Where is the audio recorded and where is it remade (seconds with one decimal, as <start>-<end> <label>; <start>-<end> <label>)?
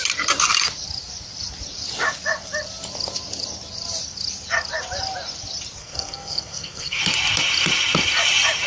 0.0-5.8 recorded; 5.8-7.0 remade; 7.0-8.7 recorded